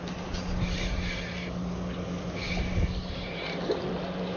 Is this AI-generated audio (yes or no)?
no